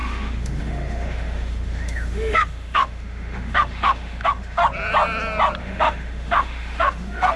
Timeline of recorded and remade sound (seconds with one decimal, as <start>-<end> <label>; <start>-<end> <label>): 0.0-4.6 remade; 4.6-5.6 recorded; 5.6-7.4 remade